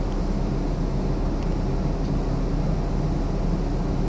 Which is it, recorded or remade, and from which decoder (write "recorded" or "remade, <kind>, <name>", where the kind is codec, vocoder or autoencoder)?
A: recorded